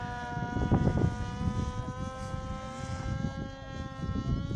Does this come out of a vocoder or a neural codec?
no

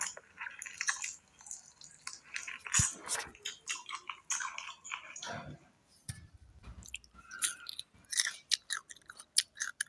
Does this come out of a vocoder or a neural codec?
no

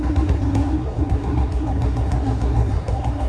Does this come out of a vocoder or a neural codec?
yes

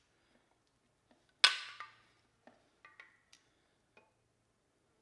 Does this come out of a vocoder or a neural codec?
no